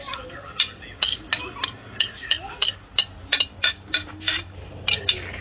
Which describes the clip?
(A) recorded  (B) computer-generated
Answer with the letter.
A